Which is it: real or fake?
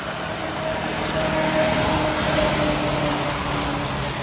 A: real